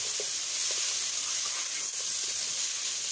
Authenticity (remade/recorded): recorded